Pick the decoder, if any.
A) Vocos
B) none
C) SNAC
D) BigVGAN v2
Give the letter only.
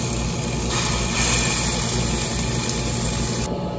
B